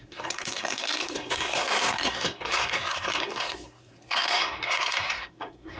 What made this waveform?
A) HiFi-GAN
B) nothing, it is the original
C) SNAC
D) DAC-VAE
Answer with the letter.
C